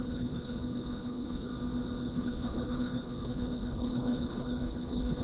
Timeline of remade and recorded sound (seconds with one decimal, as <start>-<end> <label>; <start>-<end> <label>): 0.0-1.5 remade; 1.5-2.0 recorded; 2.0-5.2 remade